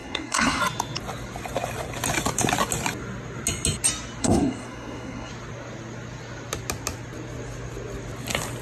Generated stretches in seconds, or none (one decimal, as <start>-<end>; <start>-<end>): 0.0-0.6; 4.2-5.3